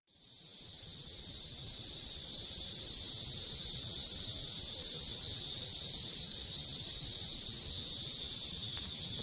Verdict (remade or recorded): recorded